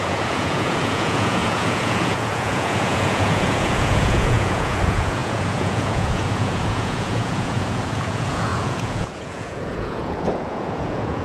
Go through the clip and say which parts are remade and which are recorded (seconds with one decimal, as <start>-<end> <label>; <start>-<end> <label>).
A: 0.0-11.2 remade